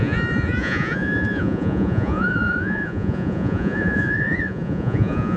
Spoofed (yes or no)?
yes